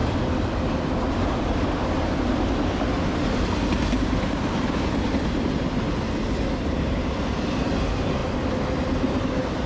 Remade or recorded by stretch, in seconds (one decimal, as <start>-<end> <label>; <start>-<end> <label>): 0.0-9.7 recorded